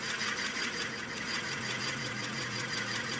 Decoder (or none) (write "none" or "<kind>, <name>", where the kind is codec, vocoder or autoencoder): vocoder, Vocos